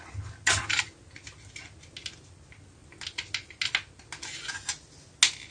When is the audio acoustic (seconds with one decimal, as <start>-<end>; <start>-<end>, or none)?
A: 0.0-5.5